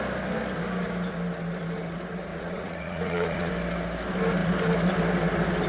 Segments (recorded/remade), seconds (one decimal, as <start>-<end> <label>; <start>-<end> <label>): 0.0-2.3 recorded; 2.3-3.5 remade; 3.5-5.7 recorded